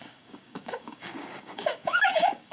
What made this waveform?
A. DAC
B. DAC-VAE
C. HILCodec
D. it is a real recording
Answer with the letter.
A